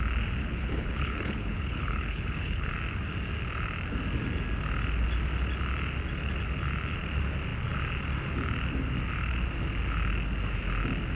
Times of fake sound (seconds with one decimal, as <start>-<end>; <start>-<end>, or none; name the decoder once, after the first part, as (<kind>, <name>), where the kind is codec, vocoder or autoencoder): 0.4-2.7 (codec, HILCodec)